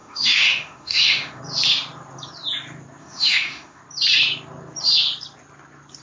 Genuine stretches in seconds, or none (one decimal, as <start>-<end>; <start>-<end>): 1.4-3.0; 3.8-6.0